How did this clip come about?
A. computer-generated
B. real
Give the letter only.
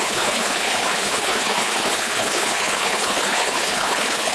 A